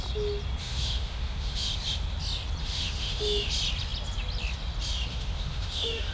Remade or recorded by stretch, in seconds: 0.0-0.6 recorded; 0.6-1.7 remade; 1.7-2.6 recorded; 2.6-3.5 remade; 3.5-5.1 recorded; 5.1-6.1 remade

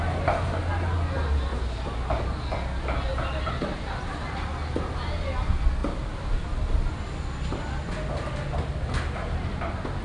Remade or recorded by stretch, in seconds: 0.0-10.0 recorded